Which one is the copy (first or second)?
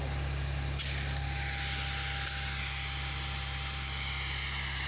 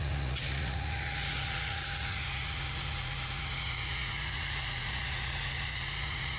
second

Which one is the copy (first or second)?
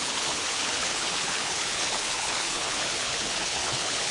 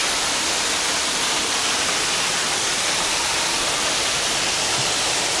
first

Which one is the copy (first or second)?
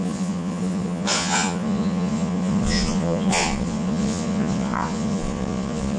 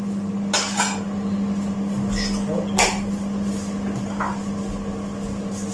first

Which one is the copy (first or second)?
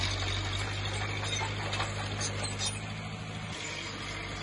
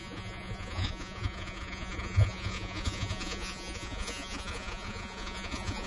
second